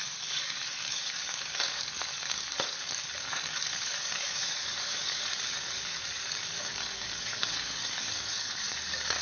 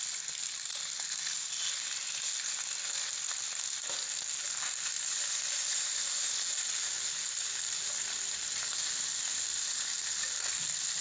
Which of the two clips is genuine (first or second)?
second